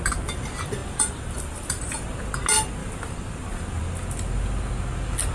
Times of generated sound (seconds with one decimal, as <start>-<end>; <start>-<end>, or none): 0.8-1.8; 2.8-3.8